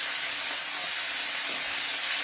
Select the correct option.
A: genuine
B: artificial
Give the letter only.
A